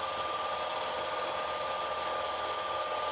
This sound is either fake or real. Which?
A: real